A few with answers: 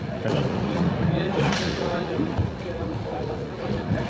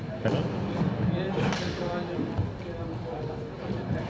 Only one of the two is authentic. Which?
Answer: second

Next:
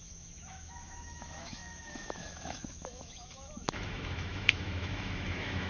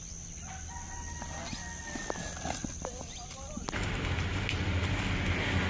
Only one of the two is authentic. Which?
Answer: second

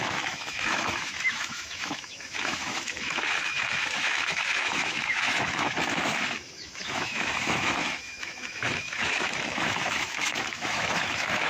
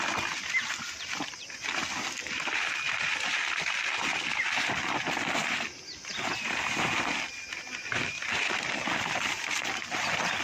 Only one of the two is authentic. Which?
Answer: second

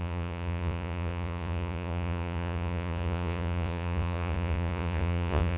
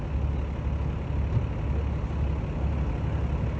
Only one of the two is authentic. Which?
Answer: second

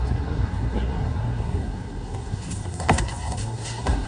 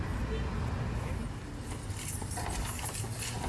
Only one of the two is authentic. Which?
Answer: second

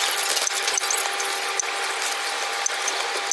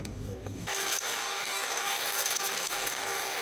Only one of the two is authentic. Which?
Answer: first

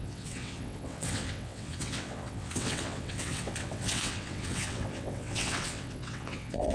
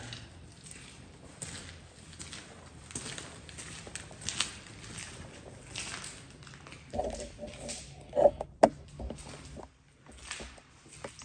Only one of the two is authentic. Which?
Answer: second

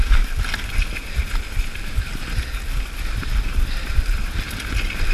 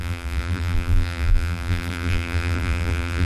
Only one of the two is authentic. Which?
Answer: first